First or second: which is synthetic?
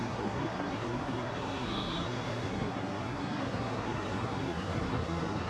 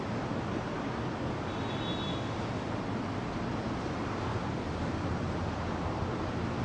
first